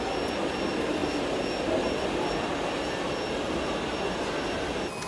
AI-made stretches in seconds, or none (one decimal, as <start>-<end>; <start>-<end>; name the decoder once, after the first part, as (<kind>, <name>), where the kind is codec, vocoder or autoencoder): none